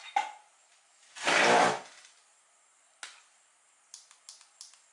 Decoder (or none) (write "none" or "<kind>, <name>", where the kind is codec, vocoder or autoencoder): none